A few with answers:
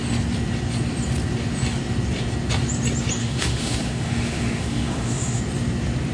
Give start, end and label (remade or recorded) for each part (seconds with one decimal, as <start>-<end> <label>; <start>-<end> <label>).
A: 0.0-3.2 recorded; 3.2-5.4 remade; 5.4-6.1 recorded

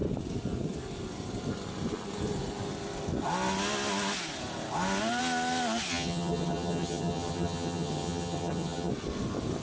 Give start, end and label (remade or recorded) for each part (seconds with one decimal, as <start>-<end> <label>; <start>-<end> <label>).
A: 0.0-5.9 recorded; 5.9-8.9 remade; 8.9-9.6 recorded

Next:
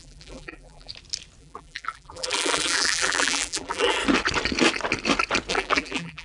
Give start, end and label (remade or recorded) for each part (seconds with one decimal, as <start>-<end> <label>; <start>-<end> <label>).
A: 0.0-0.9 remade; 0.9-1.4 recorded; 1.4-4.0 remade; 4.0-5.5 recorded; 5.5-6.2 remade

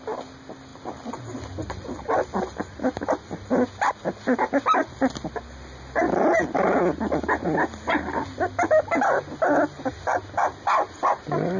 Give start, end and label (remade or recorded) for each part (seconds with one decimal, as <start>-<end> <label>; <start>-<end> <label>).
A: 0.0-11.6 recorded

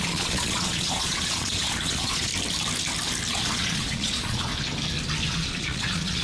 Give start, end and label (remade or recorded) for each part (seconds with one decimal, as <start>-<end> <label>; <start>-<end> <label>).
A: 0.0-2.3 remade; 2.3-3.3 recorded; 3.3-4.5 remade; 4.5-5.3 recorded; 5.3-6.2 remade

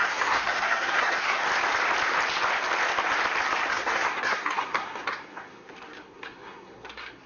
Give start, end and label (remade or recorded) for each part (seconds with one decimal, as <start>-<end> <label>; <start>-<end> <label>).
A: 0.0-1.4 remade; 1.4-3.7 recorded; 3.7-7.3 remade

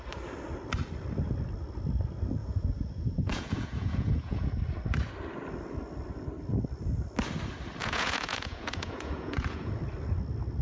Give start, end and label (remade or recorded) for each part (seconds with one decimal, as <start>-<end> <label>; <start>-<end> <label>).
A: 0.0-2.4 recorded; 2.4-4.6 remade; 4.6-7.8 recorded; 7.8-9.7 remade; 9.7-10.6 recorded